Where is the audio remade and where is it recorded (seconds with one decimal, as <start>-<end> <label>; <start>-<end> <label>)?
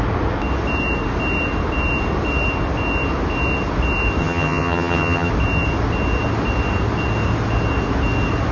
0.0-4.2 recorded; 4.2-5.3 remade; 5.3-8.5 recorded